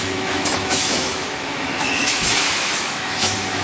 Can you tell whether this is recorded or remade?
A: remade